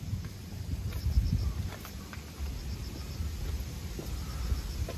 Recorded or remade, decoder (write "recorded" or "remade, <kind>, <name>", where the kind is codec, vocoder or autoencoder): recorded